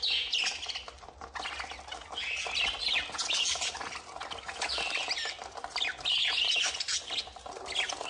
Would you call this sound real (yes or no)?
yes